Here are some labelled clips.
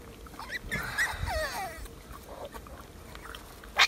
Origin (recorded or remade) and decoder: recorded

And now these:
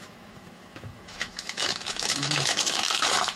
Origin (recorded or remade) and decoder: remade, autoencoder, DAC-VAE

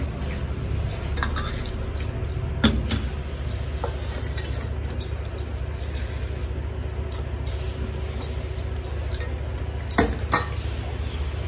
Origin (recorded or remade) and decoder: recorded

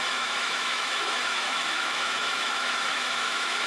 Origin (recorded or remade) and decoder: remade, autoencoder, DAC-VAE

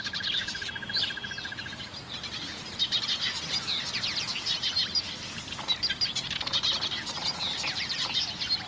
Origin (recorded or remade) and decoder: remade, vocoder, BigVGAN v2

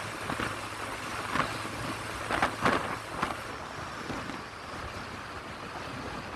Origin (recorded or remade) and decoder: recorded